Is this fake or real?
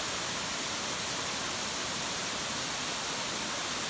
real